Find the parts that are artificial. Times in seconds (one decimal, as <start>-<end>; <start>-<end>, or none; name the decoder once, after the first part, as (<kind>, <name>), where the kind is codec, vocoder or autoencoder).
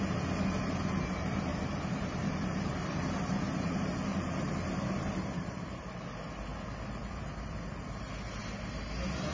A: 1.5-5.8 (vocoder, BigVGAN v2); 6.5-8.4